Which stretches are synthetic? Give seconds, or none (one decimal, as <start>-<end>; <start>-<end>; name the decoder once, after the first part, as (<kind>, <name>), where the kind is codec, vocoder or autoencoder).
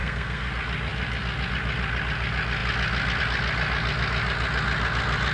0.0-0.5 (codec, SNAC)